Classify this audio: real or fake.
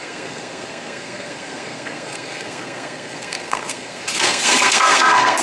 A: fake